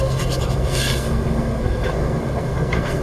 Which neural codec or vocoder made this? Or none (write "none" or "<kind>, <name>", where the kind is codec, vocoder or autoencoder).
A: codec, SNAC